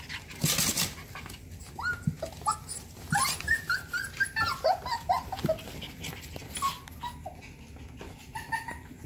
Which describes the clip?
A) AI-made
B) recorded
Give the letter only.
B